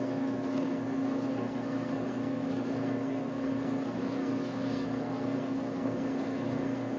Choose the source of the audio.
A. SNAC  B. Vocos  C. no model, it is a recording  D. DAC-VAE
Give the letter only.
A